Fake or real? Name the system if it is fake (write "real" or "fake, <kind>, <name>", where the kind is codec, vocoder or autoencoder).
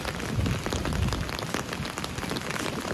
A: real